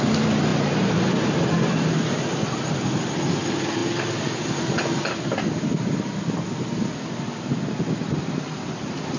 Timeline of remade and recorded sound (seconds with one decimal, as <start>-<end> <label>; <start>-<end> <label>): 0.0-9.2 recorded